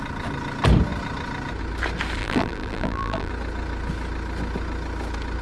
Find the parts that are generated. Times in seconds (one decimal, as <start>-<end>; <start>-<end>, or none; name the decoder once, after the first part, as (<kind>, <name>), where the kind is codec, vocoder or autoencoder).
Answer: 2.2-3.3 (vocoder, BigVGAN v2)